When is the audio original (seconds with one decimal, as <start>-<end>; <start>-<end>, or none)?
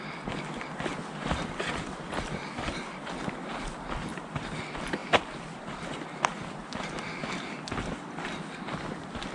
0.0-4.1; 4.6-5.0; 7.5-9.3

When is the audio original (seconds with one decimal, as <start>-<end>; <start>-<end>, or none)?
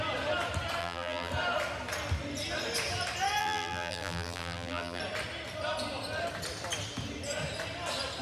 0.0-0.8; 1.3-3.4; 5.0-8.2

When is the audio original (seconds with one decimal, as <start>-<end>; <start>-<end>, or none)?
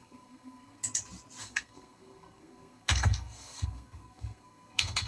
0.8-1.4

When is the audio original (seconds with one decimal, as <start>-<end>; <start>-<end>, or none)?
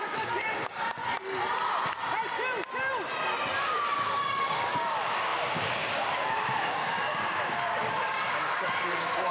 1.0-3.6